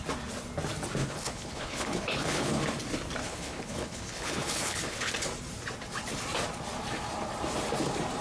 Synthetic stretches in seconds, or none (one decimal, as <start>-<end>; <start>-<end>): 1.0-2.6; 3.2-5.1